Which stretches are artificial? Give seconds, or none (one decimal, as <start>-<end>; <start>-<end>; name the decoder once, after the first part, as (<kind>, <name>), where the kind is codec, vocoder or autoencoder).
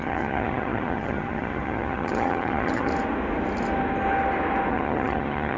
0.0-2.9 (vocoder, HiFi-GAN); 4.7-5.6